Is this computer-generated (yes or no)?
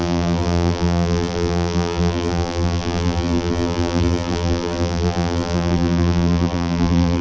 yes